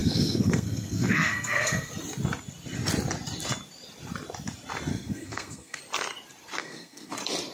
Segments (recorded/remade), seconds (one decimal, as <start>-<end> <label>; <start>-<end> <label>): 0.0-1.9 remade; 1.9-4.9 recorded; 4.9-5.8 remade; 5.8-6.6 recorded; 6.6-7.1 remade; 7.1-7.5 recorded